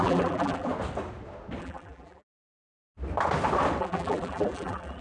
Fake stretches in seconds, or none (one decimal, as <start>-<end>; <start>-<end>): 0.0-0.7; 1.6-2.4; 3.8-5.0